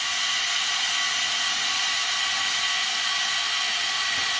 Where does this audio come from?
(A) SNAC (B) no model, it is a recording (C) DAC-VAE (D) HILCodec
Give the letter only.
B